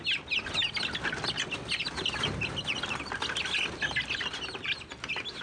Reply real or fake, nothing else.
real